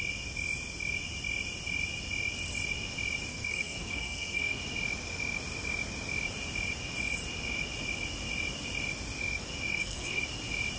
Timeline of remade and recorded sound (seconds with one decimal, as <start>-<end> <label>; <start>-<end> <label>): 0.0-3.3 recorded; 3.3-4.6 remade; 4.6-9.7 recorded; 9.7-10.2 remade; 10.2-10.8 recorded